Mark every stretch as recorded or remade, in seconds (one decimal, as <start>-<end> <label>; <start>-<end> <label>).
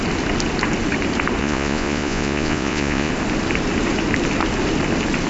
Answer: 0.0-1.4 recorded; 1.4-3.1 remade; 3.1-5.3 recorded